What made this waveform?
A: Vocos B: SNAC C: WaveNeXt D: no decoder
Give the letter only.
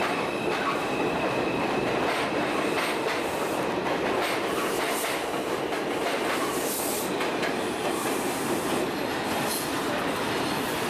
D